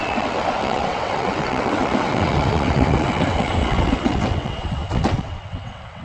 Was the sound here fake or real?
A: fake